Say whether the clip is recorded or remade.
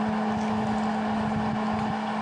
recorded